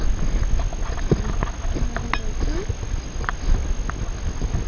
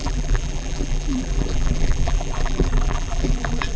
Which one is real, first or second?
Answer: first